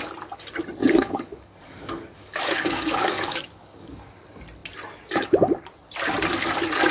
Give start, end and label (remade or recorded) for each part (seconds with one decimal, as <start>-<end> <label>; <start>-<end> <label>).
0.0-0.8 recorded; 0.8-4.0 remade; 4.0-6.9 recorded

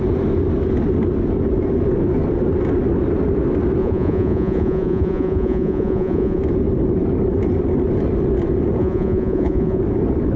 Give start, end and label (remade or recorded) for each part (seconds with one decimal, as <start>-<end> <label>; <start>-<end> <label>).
0.0-3.8 recorded; 3.8-6.4 remade; 6.4-8.8 recorded; 8.8-9.8 remade; 9.8-10.4 recorded

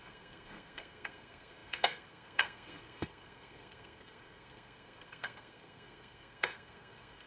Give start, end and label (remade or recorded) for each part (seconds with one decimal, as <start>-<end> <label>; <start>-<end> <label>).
0.0-7.3 remade

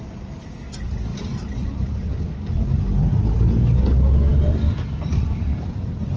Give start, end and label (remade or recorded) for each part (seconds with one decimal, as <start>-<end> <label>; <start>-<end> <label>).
0.0-6.2 recorded

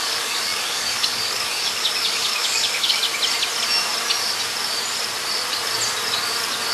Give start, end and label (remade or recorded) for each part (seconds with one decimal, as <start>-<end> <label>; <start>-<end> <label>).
0.0-3.0 remade; 3.0-6.7 recorded

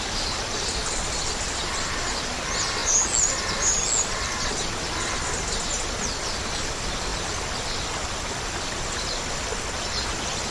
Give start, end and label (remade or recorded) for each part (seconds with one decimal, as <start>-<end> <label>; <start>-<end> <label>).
0.0-10.5 recorded